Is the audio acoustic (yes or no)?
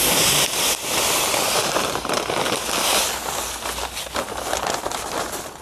yes